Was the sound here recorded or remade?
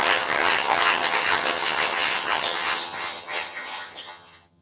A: remade